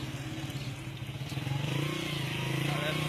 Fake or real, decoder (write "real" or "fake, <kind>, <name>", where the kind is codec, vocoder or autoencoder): real